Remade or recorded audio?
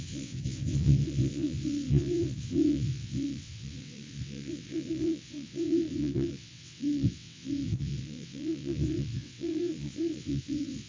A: remade